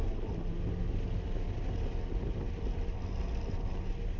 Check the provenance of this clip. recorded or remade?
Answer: recorded